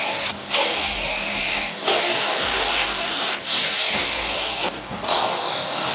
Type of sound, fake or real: fake